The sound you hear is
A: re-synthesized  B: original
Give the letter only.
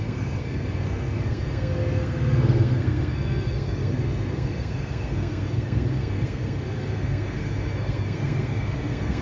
A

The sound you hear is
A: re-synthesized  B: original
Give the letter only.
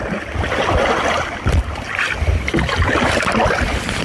B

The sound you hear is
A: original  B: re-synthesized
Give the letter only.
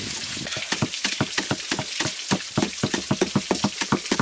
A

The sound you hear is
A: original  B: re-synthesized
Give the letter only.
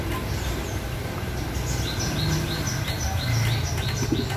A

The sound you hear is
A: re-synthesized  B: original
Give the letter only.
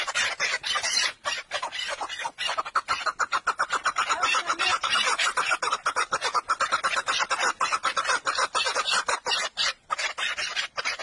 B